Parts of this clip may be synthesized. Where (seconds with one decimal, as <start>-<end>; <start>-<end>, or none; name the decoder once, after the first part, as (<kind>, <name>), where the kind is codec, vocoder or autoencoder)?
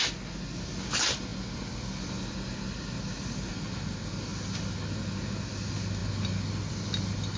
none